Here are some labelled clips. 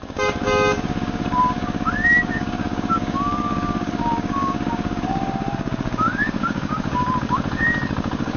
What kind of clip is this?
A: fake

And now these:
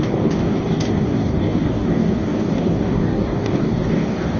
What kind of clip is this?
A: fake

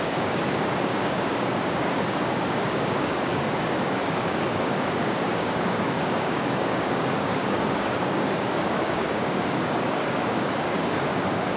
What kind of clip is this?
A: fake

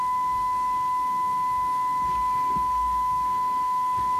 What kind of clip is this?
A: fake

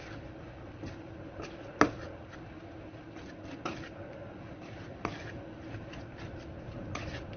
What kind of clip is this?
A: real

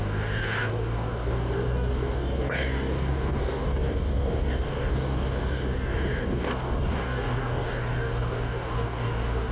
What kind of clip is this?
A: fake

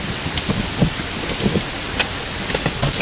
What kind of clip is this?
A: real